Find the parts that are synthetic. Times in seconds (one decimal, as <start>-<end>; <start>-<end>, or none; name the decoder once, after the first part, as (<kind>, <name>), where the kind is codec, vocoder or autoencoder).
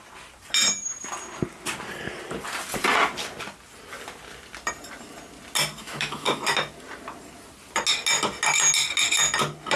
5.8-6.4 (autoencoder, DAC-VAE)